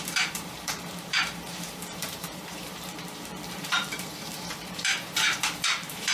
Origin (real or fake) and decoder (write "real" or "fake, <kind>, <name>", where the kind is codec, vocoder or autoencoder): fake, vocoder, BigVGAN v2